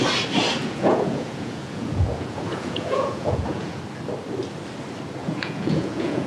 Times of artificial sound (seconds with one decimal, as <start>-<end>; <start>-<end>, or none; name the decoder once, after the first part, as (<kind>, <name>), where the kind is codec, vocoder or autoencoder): 0.6-3.8 (vocoder, Vocos); 5.2-6.3